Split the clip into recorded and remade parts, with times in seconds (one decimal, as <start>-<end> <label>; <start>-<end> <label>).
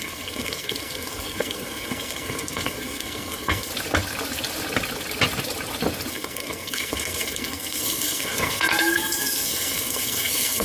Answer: 0.0-3.7 remade; 3.7-6.1 recorded; 6.1-10.6 remade